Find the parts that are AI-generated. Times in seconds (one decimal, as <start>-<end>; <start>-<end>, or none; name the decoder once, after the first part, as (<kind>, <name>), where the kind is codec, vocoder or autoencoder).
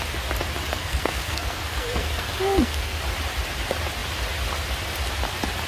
0.7-3.0 (codec, SNAC)